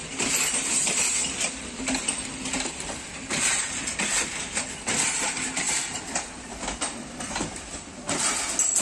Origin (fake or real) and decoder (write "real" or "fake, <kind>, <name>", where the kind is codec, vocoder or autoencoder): real